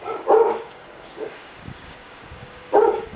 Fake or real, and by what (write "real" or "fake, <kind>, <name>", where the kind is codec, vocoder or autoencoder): fake, codec, DAC